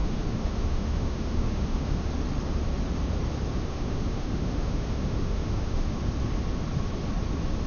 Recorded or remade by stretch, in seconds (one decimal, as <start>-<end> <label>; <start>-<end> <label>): 0.0-2.1 remade; 2.1-3.5 recorded; 3.5-6.0 remade; 6.0-7.7 recorded